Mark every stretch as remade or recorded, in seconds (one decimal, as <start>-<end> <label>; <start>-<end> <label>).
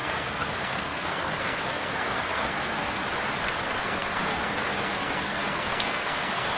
0.0-3.0 remade; 3.0-3.5 recorded; 3.5-6.6 remade